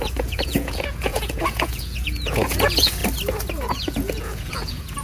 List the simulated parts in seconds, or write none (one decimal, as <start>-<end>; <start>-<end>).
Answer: 0.0-3.0; 3.7-5.0